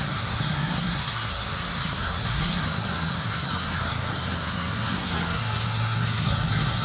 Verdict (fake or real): fake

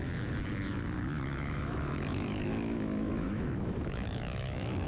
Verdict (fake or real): fake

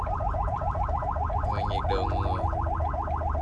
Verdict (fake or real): real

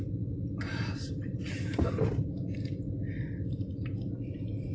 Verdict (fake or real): real